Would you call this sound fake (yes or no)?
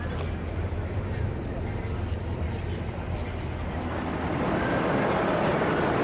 no